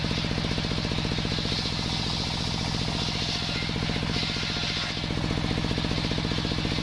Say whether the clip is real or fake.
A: real